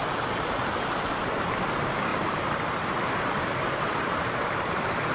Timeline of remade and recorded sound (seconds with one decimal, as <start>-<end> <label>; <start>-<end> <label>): 0.0-2.1 recorded; 2.1-5.1 remade

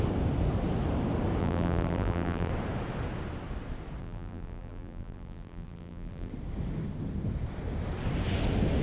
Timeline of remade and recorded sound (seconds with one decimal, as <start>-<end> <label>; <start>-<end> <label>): 0.0-1.4 recorded; 1.4-2.5 remade; 2.5-4.0 recorded; 4.0-6.3 remade; 6.3-8.8 recorded